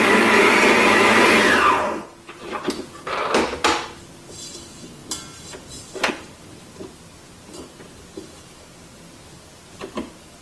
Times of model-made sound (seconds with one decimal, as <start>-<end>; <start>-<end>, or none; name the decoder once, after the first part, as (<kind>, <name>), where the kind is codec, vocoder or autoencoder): none